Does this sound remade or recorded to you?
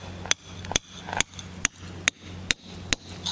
recorded